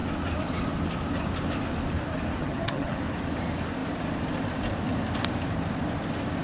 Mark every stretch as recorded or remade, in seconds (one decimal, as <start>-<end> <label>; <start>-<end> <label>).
0.0-2.4 recorded; 2.4-3.0 remade; 3.0-6.4 recorded